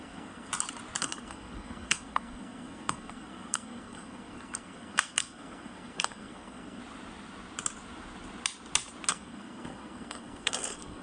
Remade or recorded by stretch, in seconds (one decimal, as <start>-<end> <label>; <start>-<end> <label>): 0.0-0.5 remade; 0.5-1.0 recorded; 1.0-6.8 remade; 6.8-9.1 recorded; 9.1-11.0 remade